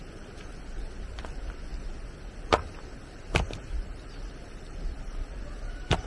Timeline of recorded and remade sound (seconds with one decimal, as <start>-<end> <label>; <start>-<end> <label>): 0.0-6.1 recorded